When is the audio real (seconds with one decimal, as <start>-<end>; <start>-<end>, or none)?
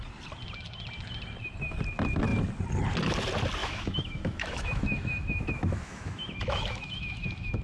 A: 0.0-3.6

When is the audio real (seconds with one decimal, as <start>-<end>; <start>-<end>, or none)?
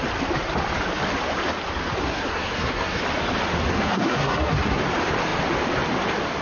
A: 0.0-2.0; 3.0-3.7; 4.8-6.4